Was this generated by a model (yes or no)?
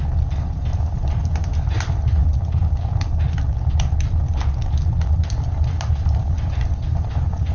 no